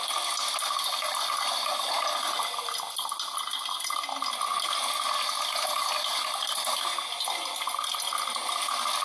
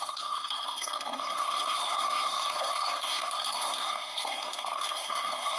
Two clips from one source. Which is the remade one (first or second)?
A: second